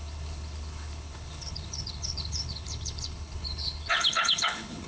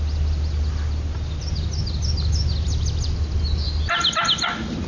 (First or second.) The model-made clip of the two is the first